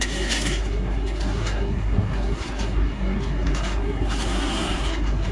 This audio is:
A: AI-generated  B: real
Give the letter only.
A